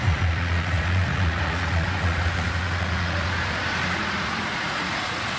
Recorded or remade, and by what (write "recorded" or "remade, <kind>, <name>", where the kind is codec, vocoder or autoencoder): remade, vocoder, Vocos